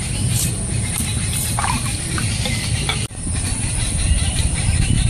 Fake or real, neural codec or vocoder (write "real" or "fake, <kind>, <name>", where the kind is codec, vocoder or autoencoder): fake, vocoder, BigVGAN v2